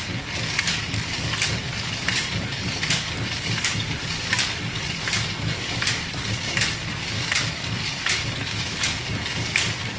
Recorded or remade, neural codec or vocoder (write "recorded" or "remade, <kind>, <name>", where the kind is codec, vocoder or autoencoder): remade, codec, DAC